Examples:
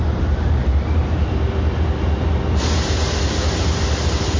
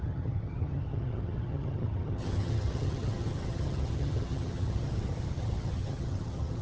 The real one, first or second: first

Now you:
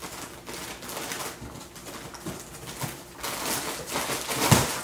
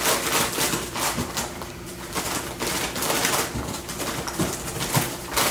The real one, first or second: first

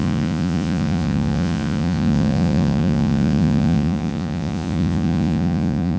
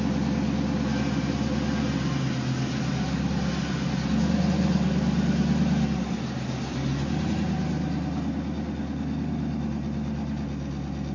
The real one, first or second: second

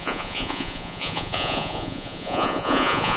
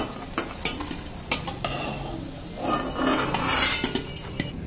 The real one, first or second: second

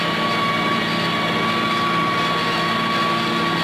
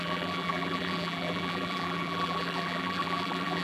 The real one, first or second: first